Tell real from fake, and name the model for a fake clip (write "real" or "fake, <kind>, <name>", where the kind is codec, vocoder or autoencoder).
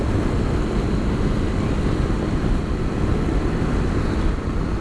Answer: real